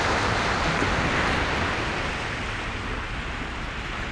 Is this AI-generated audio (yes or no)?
no